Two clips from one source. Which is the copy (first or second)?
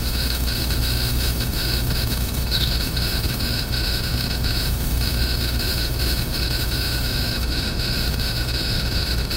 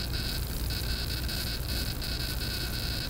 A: first